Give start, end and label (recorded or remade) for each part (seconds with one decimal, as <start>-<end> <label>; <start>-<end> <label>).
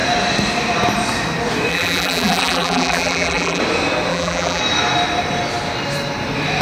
0.0-1.7 recorded; 1.7-3.6 remade; 3.6-4.1 recorded; 4.1-4.6 remade; 4.6-6.6 recorded